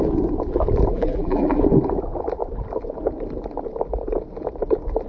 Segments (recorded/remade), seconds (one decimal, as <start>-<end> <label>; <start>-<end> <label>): 0.0-0.9 recorded; 0.9-1.6 remade; 1.6-5.1 recorded